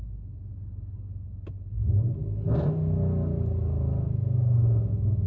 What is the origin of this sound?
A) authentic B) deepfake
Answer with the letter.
A